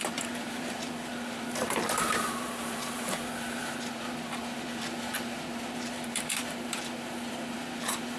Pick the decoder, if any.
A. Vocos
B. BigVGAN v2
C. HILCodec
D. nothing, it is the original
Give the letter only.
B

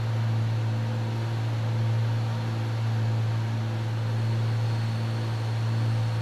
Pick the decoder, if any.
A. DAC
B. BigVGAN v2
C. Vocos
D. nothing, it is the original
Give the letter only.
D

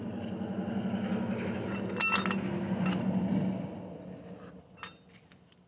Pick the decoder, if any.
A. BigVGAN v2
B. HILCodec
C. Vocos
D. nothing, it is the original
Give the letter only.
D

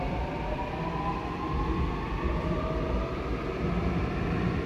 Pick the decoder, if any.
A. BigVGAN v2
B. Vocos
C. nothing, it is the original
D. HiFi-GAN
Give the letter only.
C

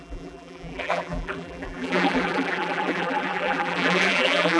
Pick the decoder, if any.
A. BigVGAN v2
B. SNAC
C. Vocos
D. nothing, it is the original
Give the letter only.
A